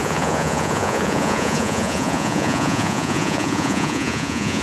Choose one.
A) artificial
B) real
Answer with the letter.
A